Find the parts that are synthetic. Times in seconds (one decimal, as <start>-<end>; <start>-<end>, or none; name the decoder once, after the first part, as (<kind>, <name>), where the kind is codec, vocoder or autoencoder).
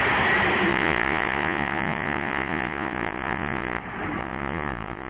0.7-3.8 (vocoder, Vocos); 4.2-5.1